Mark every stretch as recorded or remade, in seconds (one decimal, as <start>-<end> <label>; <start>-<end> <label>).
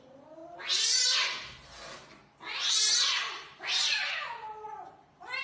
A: 0.0-0.4 remade; 0.4-2.7 recorded; 2.7-5.4 remade